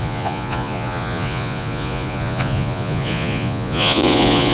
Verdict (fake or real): fake